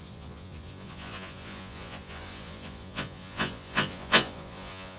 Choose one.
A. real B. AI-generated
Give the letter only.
B